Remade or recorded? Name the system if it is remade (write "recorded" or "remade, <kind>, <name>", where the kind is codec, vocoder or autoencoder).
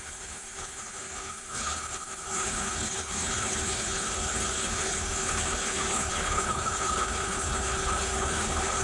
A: remade, codec, HILCodec